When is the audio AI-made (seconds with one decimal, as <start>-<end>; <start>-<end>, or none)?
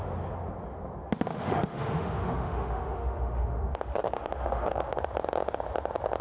1.3-5.0